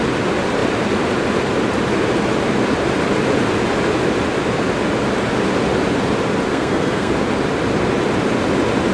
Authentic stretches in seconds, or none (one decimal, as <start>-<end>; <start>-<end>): 0.0-6.5; 7.1-8.9